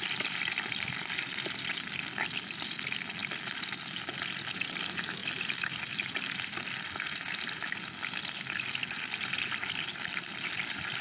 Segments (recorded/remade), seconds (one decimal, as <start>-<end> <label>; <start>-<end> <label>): 0.0-5.2 recorded; 5.2-5.9 remade; 5.9-11.0 recorded